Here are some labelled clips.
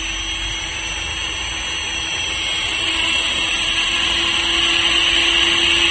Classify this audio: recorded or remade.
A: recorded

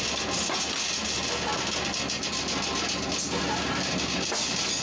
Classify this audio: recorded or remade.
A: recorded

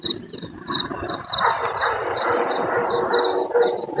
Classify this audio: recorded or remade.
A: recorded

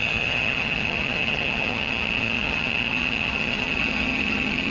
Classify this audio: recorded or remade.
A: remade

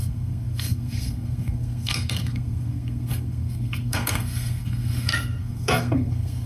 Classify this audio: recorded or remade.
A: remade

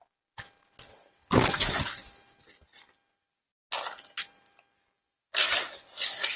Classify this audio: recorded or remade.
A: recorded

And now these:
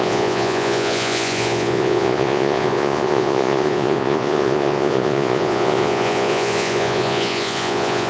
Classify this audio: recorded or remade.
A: remade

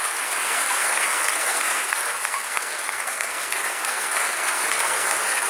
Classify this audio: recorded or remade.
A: remade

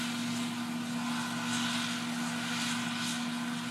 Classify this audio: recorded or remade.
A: recorded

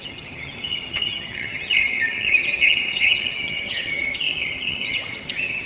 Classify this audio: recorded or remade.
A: remade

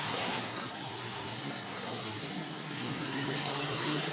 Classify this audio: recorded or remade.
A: remade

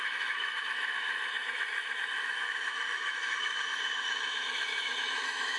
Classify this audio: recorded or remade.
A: remade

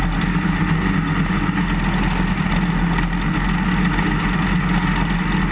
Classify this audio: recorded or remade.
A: recorded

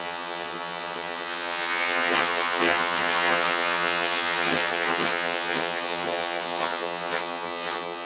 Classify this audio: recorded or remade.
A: remade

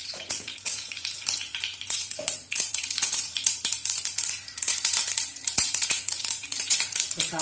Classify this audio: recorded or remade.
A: remade